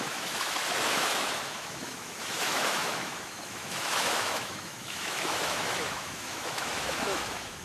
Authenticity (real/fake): fake